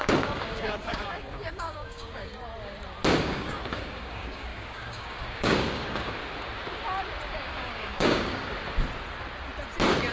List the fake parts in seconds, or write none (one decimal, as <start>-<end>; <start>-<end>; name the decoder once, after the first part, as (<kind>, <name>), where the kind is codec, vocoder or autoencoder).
0.0-2.3 (codec, DAC); 3.2-6.2; 7.3-8.5